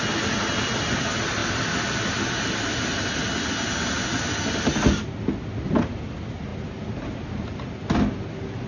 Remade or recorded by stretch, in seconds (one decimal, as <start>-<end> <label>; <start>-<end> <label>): 0.0-8.7 recorded